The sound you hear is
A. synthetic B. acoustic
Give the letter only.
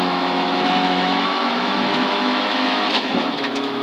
A